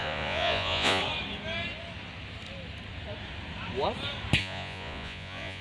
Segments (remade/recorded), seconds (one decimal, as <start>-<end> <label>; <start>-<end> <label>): 0.0-1.0 remade; 1.0-4.4 recorded; 4.4-5.6 remade